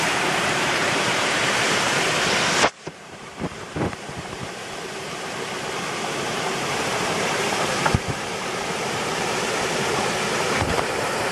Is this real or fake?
fake